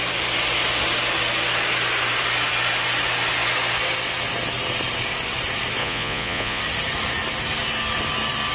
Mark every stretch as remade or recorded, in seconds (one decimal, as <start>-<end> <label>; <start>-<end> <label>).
0.0-5.8 recorded; 5.8-6.6 remade; 6.6-8.5 recorded